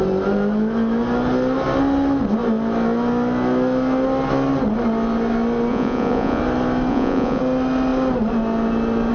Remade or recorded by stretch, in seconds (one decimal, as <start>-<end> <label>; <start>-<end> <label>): 0.0-5.7 recorded; 5.7-6.4 remade; 6.4-6.9 recorded; 6.9-7.4 remade; 7.4-9.1 recorded